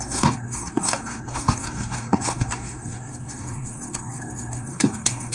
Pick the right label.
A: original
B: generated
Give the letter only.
B